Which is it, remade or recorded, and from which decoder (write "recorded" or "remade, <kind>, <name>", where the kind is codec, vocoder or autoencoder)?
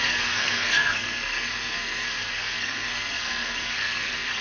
remade, codec, SNAC